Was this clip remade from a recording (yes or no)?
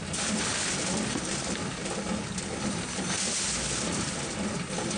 no